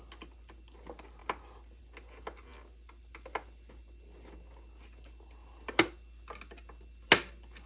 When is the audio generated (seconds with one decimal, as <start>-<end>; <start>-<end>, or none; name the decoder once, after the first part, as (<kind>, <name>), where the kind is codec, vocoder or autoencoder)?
none